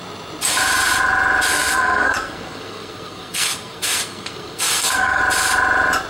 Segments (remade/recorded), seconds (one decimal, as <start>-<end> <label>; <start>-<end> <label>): 0.0-1.5 recorded; 1.5-5.2 remade; 5.2-6.1 recorded